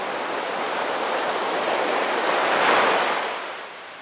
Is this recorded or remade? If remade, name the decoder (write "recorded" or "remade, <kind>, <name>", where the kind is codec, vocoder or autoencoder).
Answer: recorded